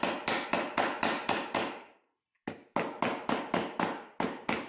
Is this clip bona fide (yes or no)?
yes